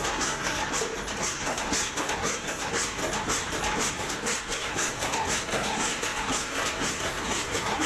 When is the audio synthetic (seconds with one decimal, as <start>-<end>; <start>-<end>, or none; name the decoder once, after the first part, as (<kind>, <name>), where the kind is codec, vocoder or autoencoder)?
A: 0.0-0.6 (codec, SNAC); 1.2-3.0; 3.9-7.9